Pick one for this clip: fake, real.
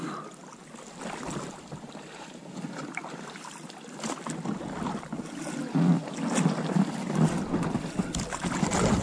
real